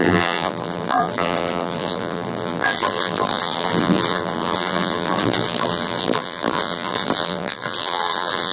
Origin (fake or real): fake